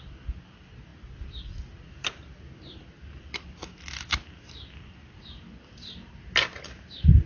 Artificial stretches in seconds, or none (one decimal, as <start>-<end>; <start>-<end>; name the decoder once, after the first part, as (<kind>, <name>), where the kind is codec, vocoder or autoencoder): none